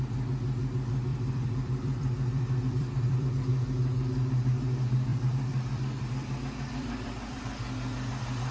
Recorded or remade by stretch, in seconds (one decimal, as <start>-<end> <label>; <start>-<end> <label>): 0.0-1.1 recorded; 1.1-3.3 remade; 3.3-5.1 recorded; 5.1-7.4 remade; 7.4-8.5 recorded